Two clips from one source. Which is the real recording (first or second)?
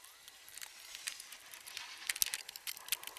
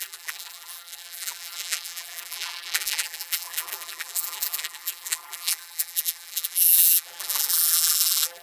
first